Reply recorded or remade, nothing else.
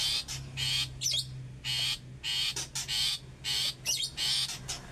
recorded